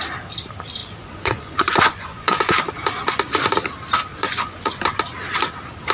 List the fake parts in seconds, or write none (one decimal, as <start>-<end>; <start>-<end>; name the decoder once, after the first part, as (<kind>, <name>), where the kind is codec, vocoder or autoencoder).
0.8-2.5 (vocoder, Vocos); 4.1-5.0